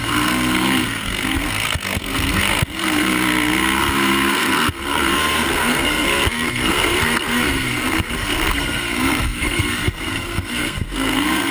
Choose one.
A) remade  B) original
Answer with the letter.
A